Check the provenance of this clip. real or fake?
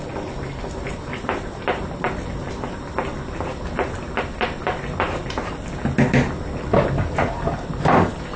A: real